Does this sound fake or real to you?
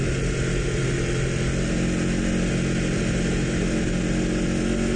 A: real